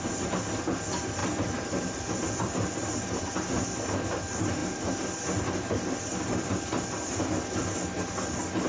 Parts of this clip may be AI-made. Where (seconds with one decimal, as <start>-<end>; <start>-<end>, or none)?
1.2-3.2